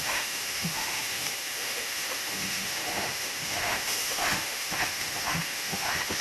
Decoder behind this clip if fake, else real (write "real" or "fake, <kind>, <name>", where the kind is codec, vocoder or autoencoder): fake, autoencoder, DAC-VAE